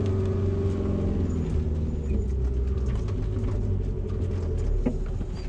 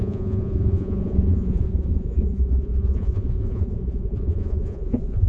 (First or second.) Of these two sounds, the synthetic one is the second